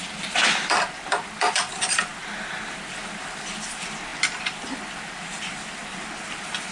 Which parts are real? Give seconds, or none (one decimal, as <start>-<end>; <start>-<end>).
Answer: 2.1-2.9